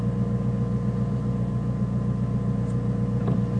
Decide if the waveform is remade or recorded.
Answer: recorded